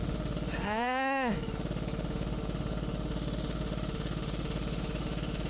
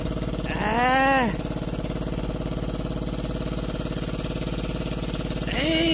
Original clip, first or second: second